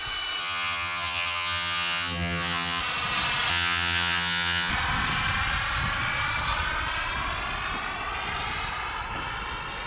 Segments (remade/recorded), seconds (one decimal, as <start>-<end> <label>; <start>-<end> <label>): 0.0-0.4 recorded; 0.4-2.8 remade; 2.8-3.5 recorded; 3.5-4.7 remade; 4.7-9.9 recorded